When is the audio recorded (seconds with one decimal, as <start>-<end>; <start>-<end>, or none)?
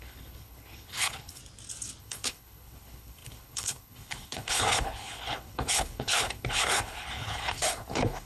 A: 1.4-2.0